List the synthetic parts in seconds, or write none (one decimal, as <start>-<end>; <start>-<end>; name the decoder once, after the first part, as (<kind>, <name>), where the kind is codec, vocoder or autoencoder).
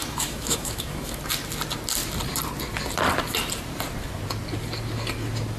0.0-1.2 (autoencoder, DAC-VAE)